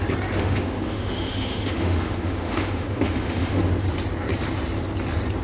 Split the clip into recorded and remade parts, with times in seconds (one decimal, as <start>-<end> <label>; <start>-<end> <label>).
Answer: 0.0-0.4 recorded; 0.4-3.6 remade; 3.6-5.4 recorded